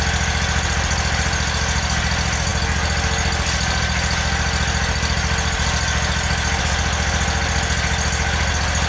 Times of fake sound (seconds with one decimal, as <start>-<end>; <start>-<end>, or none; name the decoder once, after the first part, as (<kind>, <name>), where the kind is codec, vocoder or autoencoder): none